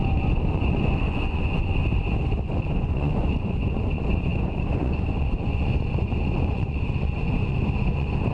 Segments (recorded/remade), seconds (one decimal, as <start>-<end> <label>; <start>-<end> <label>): 0.0-1.8 remade; 1.8-2.7 recorded; 2.7-8.3 remade